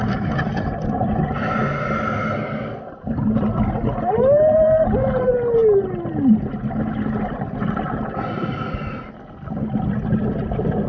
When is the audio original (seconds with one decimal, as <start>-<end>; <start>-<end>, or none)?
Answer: 0.0-10.9